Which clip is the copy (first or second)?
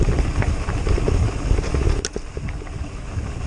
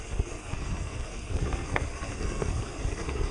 second